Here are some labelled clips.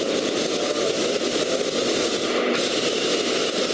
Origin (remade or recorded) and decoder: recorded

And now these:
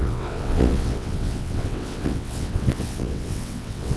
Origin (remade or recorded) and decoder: remade, vocoder, WaveNeXt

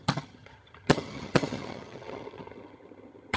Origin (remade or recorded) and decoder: remade, vocoder, HiFi-GAN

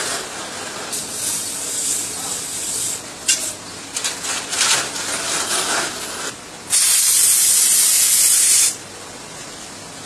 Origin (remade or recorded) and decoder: recorded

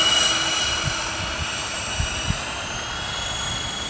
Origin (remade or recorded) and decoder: recorded